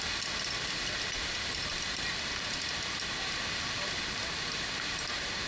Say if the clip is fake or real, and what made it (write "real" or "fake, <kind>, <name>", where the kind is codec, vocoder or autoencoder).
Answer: real